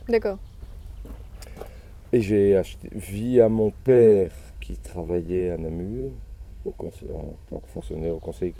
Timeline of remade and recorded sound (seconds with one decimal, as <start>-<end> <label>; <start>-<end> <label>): 0.0-3.8 recorded; 3.8-5.4 remade; 5.4-6.0 recorded; 6.0-7.8 remade; 7.8-8.6 recorded